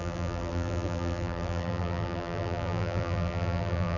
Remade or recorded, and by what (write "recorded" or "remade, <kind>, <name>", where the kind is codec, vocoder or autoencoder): remade, vocoder, BigVGAN v2